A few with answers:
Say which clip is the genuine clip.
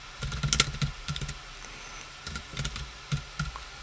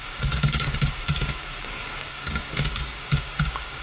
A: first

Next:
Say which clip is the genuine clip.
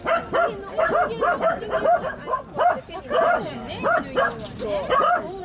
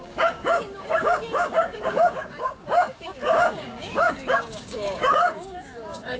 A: first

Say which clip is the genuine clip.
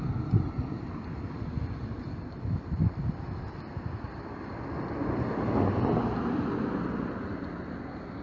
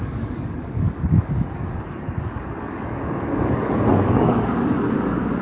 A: first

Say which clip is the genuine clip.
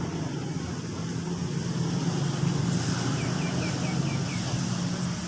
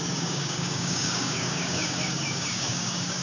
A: first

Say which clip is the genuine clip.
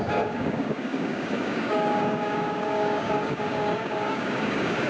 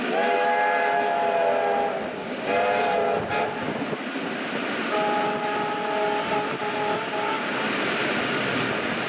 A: second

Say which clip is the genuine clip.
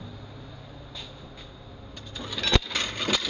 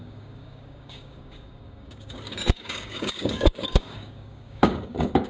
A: first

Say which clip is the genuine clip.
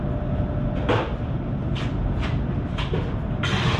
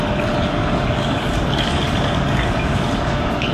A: first